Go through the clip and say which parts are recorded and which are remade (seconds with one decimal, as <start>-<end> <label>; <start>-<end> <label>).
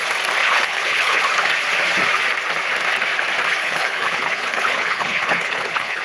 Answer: 0.0-0.4 recorded; 0.4-1.2 remade; 1.2-3.6 recorded; 3.6-6.0 remade